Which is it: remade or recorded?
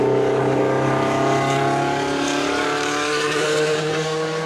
remade